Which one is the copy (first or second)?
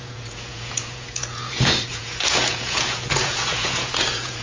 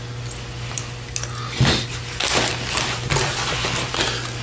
first